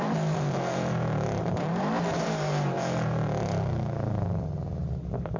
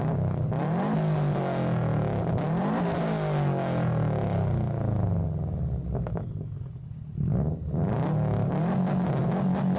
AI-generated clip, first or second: first